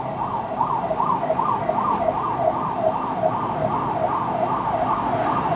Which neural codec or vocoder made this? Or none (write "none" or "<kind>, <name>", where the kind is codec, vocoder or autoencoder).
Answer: none